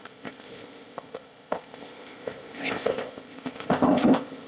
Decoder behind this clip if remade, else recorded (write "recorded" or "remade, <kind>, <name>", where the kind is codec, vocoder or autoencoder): remade, codec, ZipCodec